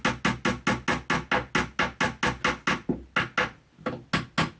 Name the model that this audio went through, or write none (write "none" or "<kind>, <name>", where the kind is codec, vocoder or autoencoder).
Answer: none